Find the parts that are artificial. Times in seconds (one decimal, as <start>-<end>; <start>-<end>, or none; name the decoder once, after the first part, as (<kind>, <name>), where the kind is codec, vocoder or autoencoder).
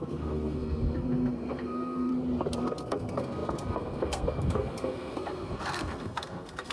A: 0.0-2.1 (codec, SNAC); 2.6-6.7